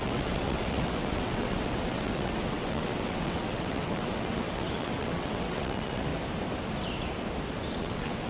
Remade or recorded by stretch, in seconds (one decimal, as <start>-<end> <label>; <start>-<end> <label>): 0.0-6.1 remade; 6.1-7.7 recorded; 7.7-8.3 remade